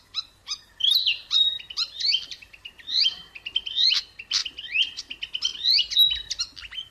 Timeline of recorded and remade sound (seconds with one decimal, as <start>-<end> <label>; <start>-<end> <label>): 0.0-0.4 recorded; 0.4-3.5 remade; 3.5-6.9 recorded